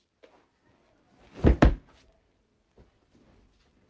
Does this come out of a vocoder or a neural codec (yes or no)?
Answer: no